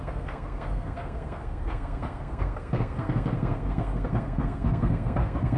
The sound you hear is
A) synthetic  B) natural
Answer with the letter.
A